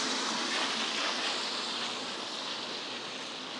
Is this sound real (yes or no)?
yes